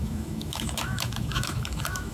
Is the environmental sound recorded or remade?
remade